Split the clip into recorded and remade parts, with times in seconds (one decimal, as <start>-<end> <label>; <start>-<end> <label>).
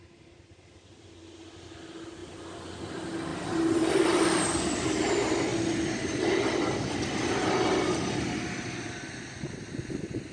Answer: 0.0-2.2 recorded; 2.2-2.8 remade; 2.8-3.3 recorded; 3.3-4.4 remade; 4.4-10.3 recorded